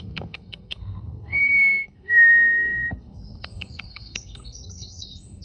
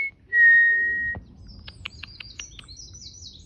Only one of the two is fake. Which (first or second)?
first